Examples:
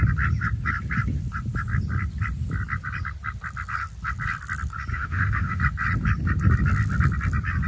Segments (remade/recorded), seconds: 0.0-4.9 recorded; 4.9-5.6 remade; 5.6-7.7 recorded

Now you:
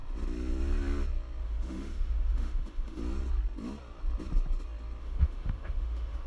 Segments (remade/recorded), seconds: 0.0-1.4 recorded; 1.4-3.0 remade; 3.0-5.0 recorded; 5.0-6.3 remade

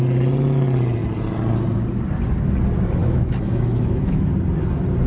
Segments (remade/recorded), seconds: 0.0-3.0 recorded; 3.0-4.3 remade; 4.3-5.1 recorded

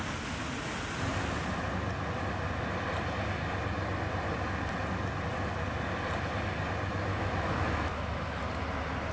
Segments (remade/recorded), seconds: 0.0-7.1 recorded; 7.1-8.4 remade; 8.4-9.1 recorded

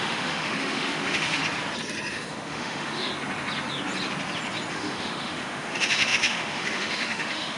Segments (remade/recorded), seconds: 0.0-1.4 remade; 1.4-2.1 recorded; 2.1-3.1 remade; 3.1-4.7 recorded; 4.7-7.6 remade

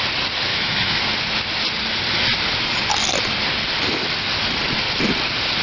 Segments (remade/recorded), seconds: 0.0-0.5 recorded; 0.5-1.0 remade; 1.0-5.6 recorded

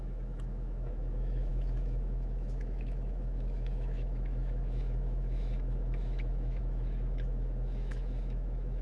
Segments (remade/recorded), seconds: 0.0-8.8 remade